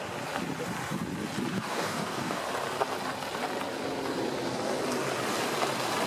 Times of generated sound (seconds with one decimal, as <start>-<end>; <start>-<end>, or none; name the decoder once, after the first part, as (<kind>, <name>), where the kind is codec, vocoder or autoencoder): 1.5-2.4 (codec, DAC)